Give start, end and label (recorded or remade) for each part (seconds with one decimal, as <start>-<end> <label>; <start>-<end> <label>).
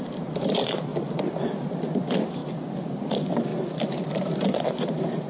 0.0-3.5 remade; 3.5-4.2 recorded; 4.2-5.3 remade